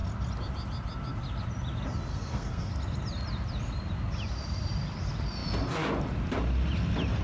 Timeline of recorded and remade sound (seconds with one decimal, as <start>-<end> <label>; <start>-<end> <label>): 0.0-2.1 recorded; 2.1-2.7 remade; 2.7-7.2 recorded